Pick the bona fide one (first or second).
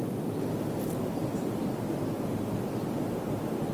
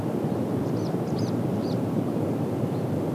first